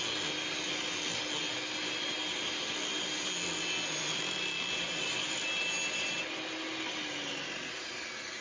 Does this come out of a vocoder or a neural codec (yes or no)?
no